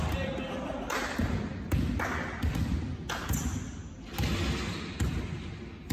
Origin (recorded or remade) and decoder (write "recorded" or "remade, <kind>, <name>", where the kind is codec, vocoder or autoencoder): recorded